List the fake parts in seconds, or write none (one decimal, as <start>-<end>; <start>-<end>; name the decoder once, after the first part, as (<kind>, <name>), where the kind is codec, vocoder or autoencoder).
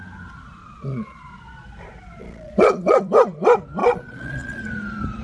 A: 0.6-1.4 (vocoder, Vocos); 2.2-3.0; 3.8-4.6